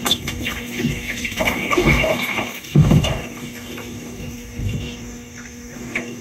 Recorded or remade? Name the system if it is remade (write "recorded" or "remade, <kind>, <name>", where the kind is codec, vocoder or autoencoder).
remade, codec, DAC